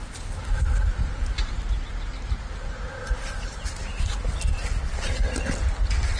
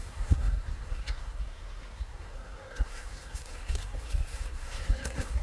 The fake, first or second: second